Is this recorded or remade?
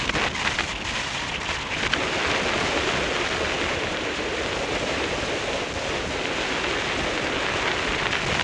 recorded